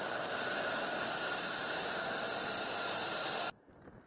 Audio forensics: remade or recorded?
recorded